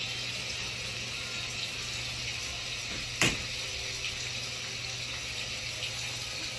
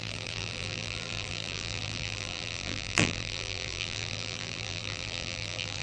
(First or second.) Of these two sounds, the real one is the first